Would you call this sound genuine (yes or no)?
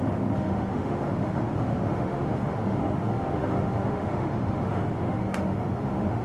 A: no